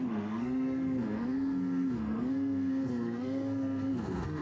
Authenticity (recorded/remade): remade